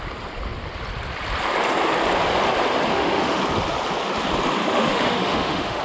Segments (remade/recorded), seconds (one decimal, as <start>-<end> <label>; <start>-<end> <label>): 0.0-2.9 recorded; 2.9-3.4 remade; 3.4-4.6 recorded; 4.6-5.8 remade